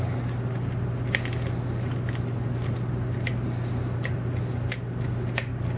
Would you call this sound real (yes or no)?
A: yes